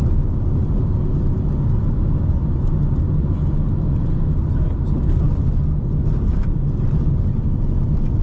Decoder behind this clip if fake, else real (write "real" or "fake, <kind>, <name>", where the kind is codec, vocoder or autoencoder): real